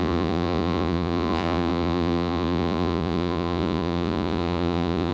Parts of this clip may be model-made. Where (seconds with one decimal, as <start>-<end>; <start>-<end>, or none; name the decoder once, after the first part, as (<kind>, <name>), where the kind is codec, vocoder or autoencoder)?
0.0-5.1 (vocoder, Vocos)